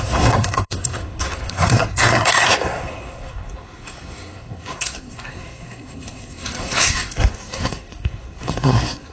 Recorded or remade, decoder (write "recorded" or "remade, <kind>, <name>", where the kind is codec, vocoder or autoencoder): remade, codec, SNAC